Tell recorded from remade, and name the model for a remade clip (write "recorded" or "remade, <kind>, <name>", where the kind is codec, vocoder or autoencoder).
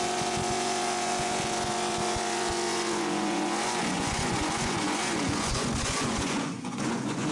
remade, vocoder, Vocos